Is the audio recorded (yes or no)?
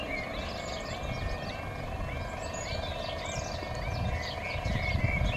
yes